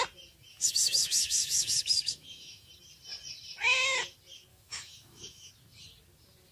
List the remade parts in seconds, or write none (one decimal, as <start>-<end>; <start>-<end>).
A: 0.5-2.7; 4.5-5.5